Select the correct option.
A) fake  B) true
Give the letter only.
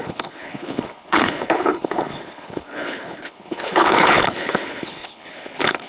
A